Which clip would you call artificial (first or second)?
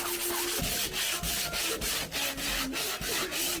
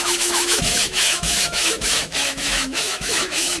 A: second